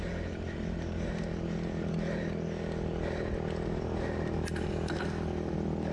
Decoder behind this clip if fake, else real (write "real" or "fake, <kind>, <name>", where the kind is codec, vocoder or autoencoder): real